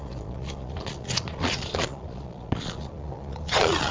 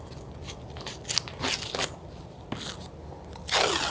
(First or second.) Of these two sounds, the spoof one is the first